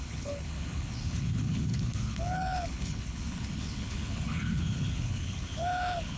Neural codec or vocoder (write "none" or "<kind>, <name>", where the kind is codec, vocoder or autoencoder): codec, HILCodec